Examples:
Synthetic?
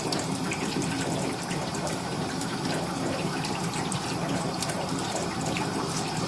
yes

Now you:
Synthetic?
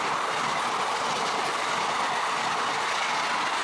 no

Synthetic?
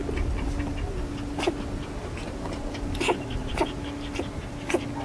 no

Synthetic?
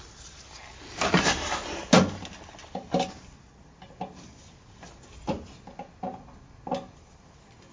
no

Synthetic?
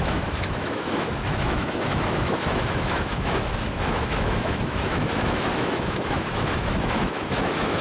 yes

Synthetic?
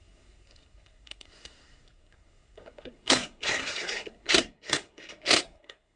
yes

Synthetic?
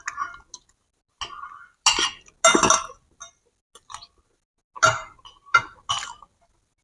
no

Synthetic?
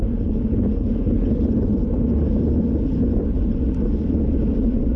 no